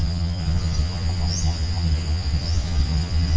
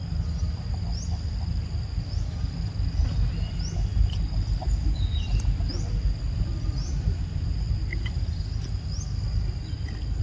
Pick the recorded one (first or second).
second